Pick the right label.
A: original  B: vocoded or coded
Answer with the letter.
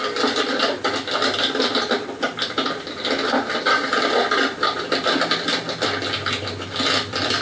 A